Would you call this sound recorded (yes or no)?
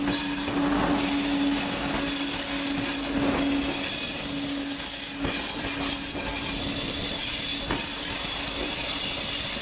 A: yes